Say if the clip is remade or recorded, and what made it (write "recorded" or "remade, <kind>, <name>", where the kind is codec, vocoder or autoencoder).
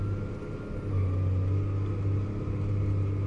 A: recorded